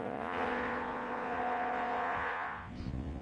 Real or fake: fake